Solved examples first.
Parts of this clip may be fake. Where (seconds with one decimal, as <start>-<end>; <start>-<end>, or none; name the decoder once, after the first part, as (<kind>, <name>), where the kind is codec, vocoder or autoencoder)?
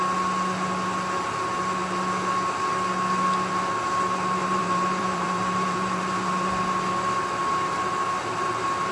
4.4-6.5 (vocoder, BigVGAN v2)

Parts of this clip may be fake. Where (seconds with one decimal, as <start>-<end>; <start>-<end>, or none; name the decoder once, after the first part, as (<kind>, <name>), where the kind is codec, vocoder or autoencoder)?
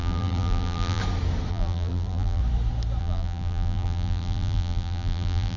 0.0-1.0 (vocoder, BigVGAN v2); 1.5-2.4; 3.0-5.6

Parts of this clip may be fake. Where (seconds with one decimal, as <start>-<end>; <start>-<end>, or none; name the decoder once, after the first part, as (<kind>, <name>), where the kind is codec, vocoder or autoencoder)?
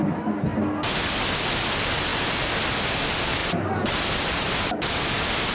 none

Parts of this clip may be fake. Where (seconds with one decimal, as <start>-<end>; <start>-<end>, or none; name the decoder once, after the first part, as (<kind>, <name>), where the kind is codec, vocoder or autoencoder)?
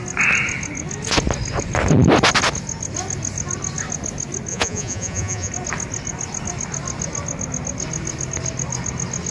4.5-5.5 (vocoder, Vocos)